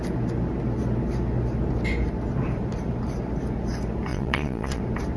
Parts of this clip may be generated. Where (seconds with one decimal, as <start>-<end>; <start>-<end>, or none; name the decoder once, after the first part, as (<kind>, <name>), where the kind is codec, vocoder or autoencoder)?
4.1-4.8 (vocoder, Vocos)